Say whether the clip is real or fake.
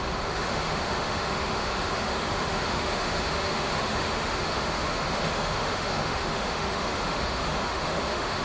fake